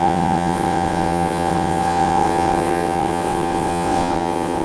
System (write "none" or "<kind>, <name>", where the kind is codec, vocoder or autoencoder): vocoder, WaveNeXt